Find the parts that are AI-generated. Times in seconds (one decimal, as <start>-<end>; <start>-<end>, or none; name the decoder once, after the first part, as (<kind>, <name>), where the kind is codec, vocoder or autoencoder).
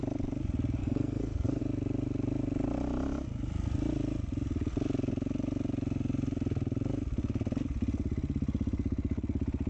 0.8-1.6 (codec, SNAC)